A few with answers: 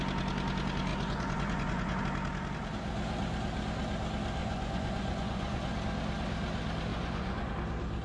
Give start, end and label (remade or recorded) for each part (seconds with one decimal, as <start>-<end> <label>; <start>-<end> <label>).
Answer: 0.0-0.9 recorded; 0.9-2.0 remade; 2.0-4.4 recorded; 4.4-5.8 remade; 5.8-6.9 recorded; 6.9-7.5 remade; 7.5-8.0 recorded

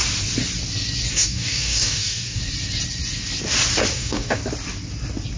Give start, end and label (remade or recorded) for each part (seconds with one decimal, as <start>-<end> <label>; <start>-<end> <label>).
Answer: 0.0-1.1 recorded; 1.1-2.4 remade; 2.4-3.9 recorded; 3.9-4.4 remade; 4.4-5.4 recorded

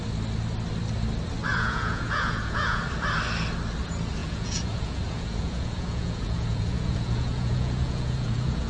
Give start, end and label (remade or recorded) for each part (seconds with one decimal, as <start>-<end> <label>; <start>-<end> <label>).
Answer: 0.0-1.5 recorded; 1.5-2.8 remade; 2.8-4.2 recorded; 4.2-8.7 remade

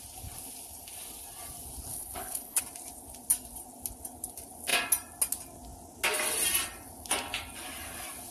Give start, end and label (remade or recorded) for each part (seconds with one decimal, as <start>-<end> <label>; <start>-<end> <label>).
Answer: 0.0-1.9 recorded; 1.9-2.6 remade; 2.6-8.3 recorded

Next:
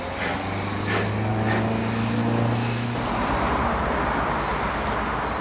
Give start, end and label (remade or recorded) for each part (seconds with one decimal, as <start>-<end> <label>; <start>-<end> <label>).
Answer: 0.0-5.4 recorded